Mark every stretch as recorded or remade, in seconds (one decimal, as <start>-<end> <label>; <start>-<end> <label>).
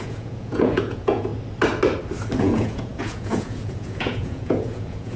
0.0-1.3 remade; 1.3-2.4 recorded; 2.4-5.2 remade